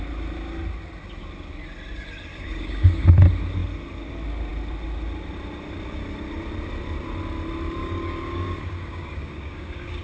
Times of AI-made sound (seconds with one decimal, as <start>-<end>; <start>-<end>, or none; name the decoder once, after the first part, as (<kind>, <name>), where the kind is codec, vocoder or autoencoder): 2.3-3.0 (codec, DAC); 7.8-10.0